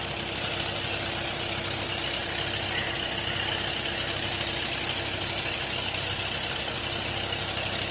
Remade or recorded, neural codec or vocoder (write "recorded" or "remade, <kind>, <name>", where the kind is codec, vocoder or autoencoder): recorded